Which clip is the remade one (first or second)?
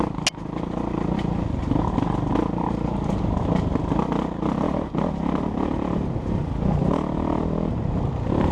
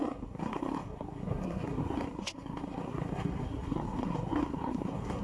second